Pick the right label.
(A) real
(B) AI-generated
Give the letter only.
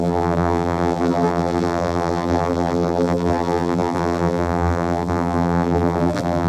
B